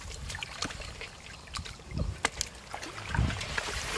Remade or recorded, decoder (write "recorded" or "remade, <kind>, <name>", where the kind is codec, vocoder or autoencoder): recorded